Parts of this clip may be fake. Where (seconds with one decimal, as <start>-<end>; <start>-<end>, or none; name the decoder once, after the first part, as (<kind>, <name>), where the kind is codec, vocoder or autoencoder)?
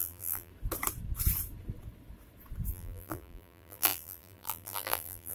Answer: 0.0-0.5 (vocoder, BigVGAN v2); 2.7-5.3